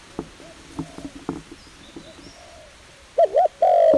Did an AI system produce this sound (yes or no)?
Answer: no